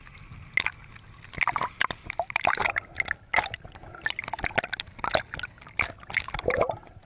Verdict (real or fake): real